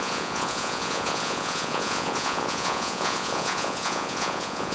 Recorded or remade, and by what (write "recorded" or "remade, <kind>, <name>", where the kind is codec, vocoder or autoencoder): remade, vocoder, Vocos